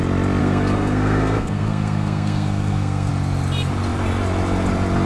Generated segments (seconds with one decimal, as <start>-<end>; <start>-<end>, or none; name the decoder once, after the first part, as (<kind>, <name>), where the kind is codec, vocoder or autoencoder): 0.4-3.1 (codec, SNAC)